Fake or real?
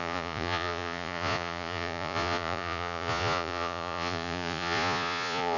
fake